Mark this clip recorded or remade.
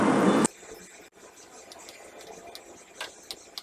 recorded